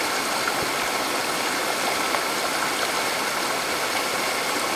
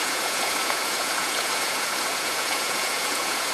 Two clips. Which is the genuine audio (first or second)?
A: first